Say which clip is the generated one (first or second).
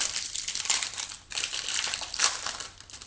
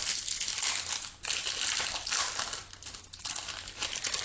first